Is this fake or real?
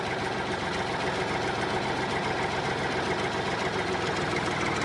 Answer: real